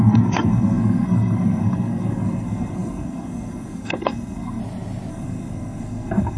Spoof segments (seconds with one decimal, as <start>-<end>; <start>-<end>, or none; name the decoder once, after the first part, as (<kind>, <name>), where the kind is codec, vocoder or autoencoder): 0.0-4.6 (codec, SNAC); 5.1-6.4